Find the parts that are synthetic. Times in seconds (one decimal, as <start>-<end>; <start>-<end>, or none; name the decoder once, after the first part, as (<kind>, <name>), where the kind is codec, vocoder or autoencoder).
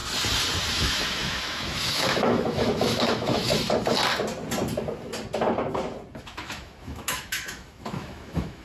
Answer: 0.7-3.5 (autoencoder, DAC-VAE); 6.2-8.6